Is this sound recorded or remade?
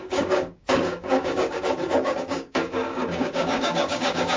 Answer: remade